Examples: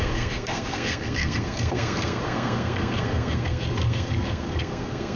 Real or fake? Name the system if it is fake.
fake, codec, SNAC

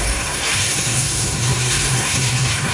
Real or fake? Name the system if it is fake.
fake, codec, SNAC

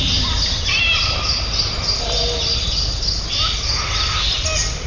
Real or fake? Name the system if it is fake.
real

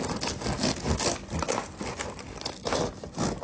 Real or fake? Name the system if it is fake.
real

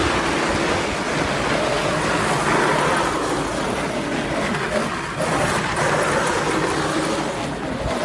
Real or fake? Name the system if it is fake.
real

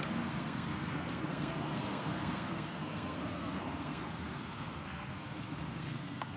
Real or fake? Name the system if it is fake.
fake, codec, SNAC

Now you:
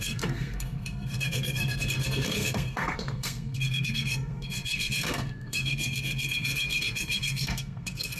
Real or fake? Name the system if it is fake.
fake, codec, SNAC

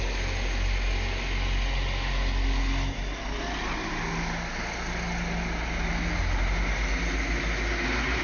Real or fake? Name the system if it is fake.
real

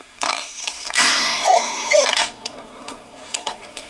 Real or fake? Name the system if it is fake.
fake, codec, SNAC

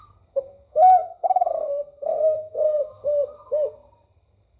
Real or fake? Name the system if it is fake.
fake, codec, SNAC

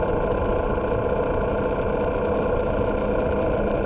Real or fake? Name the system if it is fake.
real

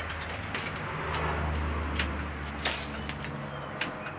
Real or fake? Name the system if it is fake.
real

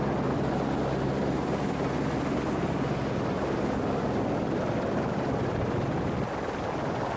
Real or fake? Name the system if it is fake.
real